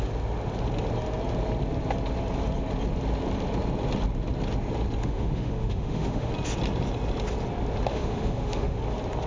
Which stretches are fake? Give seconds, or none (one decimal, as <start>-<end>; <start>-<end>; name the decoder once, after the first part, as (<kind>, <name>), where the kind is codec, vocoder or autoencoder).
5.0-6.3 (autoencoder, DAC-VAE); 7.9-8.8